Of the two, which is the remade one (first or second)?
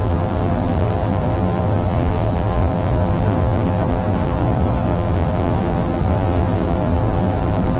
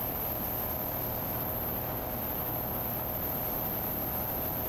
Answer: first